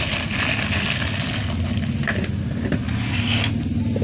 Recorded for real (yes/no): yes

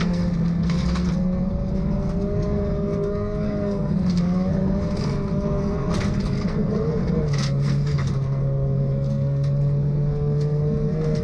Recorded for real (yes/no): no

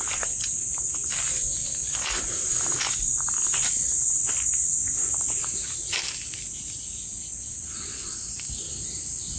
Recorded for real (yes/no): yes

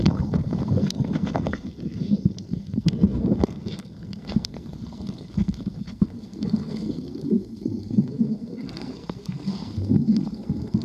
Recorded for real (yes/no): no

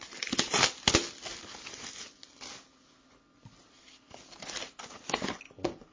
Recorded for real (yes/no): yes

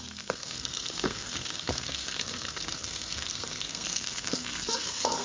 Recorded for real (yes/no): no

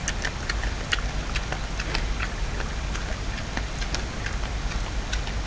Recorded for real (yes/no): yes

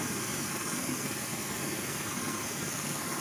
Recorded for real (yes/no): no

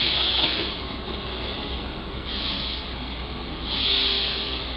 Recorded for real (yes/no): no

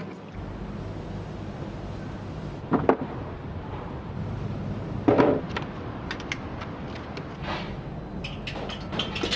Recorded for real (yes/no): yes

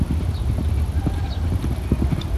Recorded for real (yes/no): yes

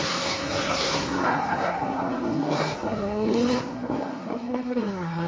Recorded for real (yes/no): no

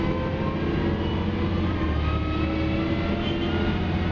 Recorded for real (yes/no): yes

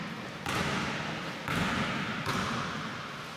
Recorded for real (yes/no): yes